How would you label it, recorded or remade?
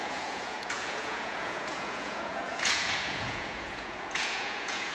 remade